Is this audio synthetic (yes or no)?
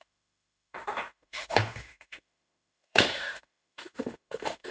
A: yes